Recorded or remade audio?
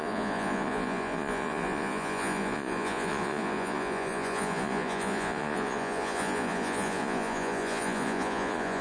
remade